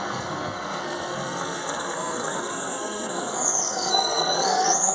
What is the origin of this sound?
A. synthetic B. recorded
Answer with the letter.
A